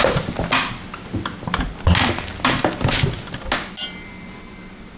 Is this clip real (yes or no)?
yes